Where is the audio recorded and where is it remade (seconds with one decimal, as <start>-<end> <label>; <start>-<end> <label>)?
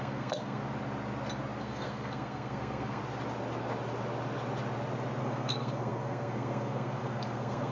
0.0-0.6 remade; 0.6-1.6 recorded; 1.6-3.0 remade; 3.0-5.2 recorded; 5.2-7.7 remade